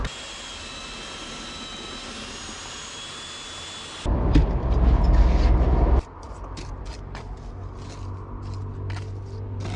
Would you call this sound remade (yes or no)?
no